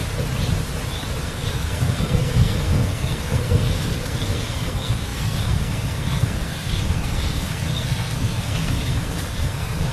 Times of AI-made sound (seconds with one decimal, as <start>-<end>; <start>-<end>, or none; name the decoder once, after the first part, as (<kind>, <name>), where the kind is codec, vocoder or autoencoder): 1.2-9.9 (codec, SNAC)